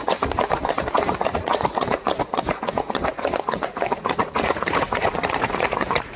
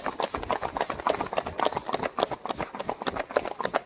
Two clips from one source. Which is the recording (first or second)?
second